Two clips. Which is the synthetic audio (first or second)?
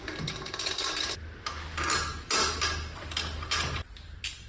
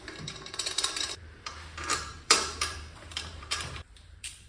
second